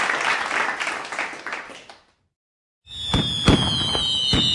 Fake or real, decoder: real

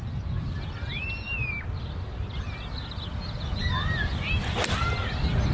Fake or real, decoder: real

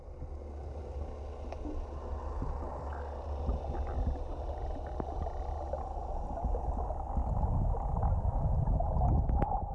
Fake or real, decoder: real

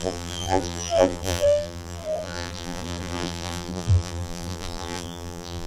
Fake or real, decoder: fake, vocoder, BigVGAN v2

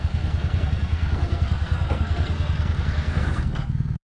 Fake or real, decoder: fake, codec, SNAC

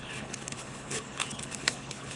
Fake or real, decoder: fake, codec, HILCodec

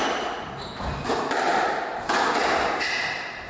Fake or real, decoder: real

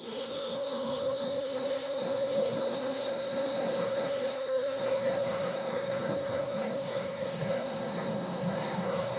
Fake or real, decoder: fake, codec, SNAC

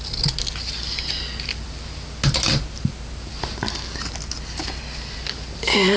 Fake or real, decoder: real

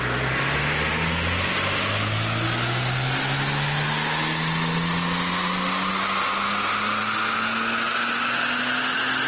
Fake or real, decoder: real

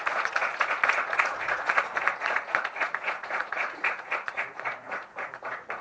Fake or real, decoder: fake, vocoder, Vocos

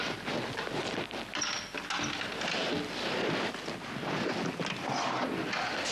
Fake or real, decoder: real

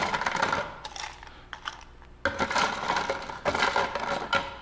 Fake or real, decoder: real